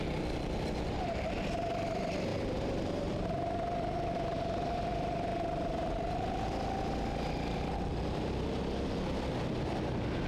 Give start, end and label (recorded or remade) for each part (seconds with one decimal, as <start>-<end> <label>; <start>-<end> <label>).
0.0-2.3 recorded; 2.3-4.8 remade; 4.8-10.3 recorded